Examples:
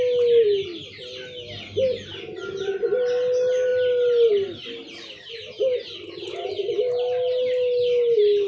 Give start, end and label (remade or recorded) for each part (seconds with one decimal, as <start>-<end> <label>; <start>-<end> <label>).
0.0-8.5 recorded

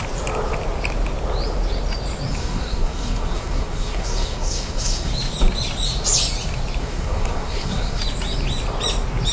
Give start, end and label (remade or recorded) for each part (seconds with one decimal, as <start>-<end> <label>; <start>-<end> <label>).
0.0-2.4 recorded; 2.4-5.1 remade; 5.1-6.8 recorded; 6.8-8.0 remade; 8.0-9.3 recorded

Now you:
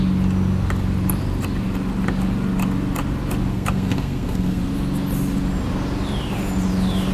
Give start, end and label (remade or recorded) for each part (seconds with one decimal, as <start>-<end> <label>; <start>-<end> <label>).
0.0-3.5 recorded; 3.5-4.6 remade; 4.6-7.1 recorded